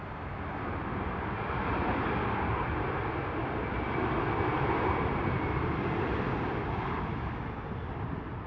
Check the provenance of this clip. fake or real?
real